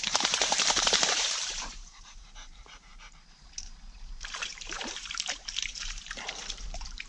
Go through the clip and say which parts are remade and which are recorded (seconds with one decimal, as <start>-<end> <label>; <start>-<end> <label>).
0.0-7.1 remade